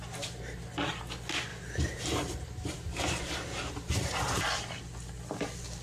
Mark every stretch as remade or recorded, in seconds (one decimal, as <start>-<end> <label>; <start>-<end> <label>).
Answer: 0.0-1.5 recorded; 1.5-4.4 remade; 4.4-5.8 recorded